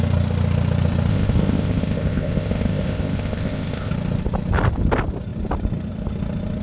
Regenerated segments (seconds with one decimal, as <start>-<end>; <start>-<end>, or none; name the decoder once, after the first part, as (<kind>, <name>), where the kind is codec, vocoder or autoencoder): 1.1-3.9 (codec, ZipCodec)